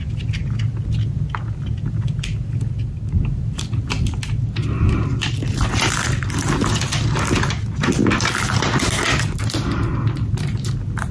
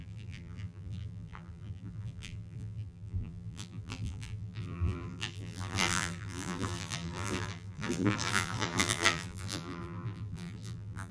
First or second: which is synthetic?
second